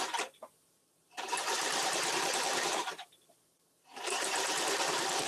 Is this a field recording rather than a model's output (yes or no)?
no